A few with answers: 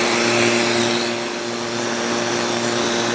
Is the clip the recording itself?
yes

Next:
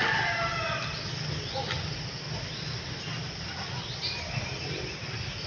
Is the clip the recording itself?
yes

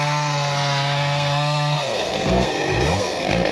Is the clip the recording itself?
no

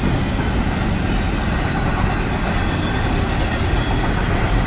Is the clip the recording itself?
yes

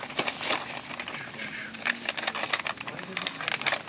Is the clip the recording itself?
yes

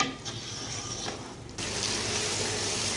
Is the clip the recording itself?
yes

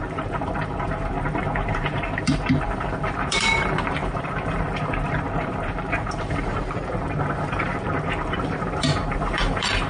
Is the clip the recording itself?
no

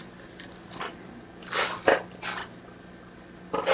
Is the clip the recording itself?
no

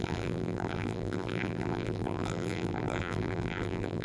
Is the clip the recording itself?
no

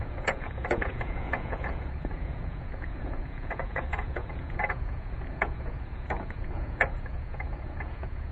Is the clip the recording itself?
no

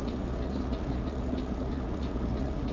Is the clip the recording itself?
no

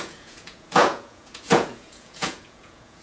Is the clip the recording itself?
no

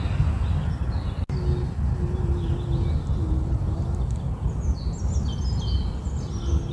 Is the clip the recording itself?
yes